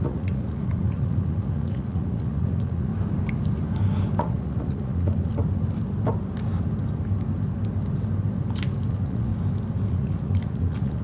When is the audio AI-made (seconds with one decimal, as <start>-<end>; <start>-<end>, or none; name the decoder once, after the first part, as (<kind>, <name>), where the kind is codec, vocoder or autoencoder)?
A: 0.0-2.9 (vocoder, Vocos); 4.2-5.3; 8.9-9.3; 9.9-11.0